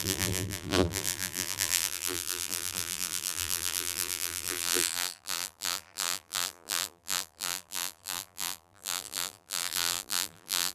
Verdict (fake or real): fake